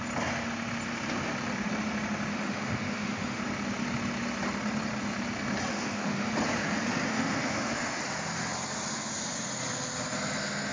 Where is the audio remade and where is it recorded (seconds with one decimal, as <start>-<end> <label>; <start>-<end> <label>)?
0.0-2.3 recorded; 2.3-3.4 remade; 3.4-5.7 recorded; 5.7-6.3 remade; 6.3-7.1 recorded; 7.1-8.0 remade; 8.0-10.7 recorded